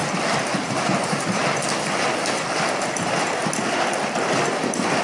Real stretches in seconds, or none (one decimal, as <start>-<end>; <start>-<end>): 0.0-0.5; 1.4-2.9; 3.4-4.0